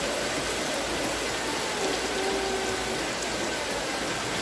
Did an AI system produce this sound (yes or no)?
no